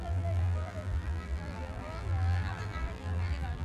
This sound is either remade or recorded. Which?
remade